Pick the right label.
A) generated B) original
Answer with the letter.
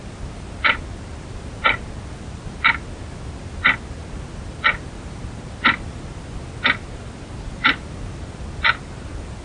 B